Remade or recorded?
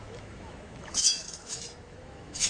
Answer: remade